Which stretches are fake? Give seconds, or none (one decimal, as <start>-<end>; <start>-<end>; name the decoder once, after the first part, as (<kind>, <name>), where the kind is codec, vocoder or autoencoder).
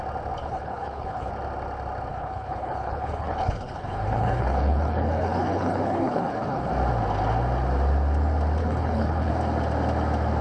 0.4-1.3 (codec, HILCodec); 2.1-6.7; 8.6-9.3